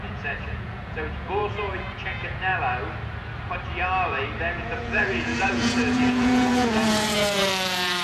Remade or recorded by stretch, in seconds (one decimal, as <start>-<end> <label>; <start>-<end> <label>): 0.0-2.5 remade; 2.5-4.5 recorded; 4.5-8.0 remade